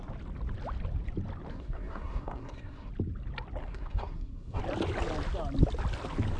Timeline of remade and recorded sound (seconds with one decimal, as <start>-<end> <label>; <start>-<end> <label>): 0.0-1.5 recorded; 1.5-2.9 remade; 2.9-3.6 recorded; 3.6-4.6 remade; 4.6-6.4 recorded